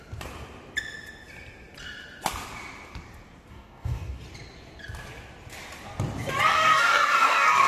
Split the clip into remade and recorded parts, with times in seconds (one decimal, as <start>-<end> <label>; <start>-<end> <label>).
0.0-3.5 recorded; 3.5-4.2 remade; 4.2-6.5 recorded; 6.5-7.7 remade